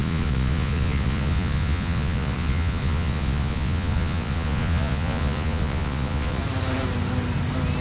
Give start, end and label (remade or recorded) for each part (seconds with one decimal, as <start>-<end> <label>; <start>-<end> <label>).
0.0-6.4 remade; 6.4-7.8 recorded